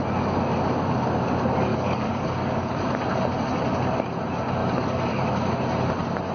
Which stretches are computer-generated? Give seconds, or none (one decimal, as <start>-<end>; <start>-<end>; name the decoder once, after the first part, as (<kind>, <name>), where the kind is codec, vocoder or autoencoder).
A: 1.7-2.7 (codec, DAC); 4.6-5.5